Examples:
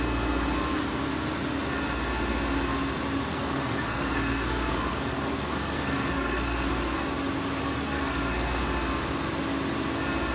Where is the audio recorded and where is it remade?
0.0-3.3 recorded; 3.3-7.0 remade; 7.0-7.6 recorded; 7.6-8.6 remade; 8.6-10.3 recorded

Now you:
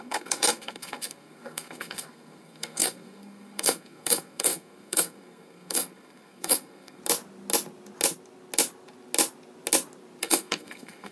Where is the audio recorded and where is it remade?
0.0-7.0 remade; 7.0-10.2 recorded; 10.2-11.1 remade

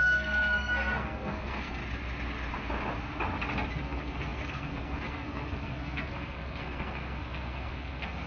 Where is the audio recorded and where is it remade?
0.0-1.8 remade; 1.8-3.8 recorded; 3.8-8.3 remade

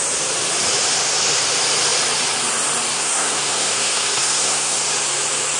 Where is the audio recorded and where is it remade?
0.0-2.9 recorded; 2.9-4.8 remade; 4.8-5.6 recorded

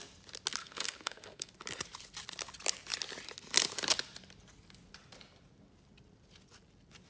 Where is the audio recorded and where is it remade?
0.0-0.6 recorded; 0.6-1.5 remade; 1.5-7.1 recorded

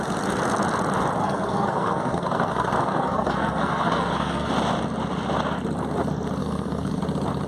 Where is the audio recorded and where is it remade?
0.0-1.2 recorded; 1.2-4.5 remade; 4.5-6.4 recorded; 6.4-7.0 remade; 7.0-7.5 recorded

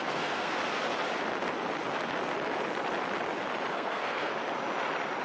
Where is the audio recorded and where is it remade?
0.0-0.6 remade; 0.6-3.7 recorded; 3.7-4.3 remade; 4.3-5.2 recorded